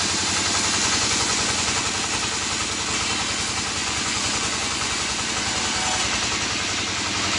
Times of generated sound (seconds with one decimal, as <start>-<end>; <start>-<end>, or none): 0.8-1.8; 3.8-5.3